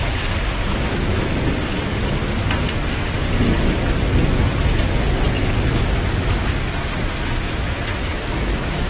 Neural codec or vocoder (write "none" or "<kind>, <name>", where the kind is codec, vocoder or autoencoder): none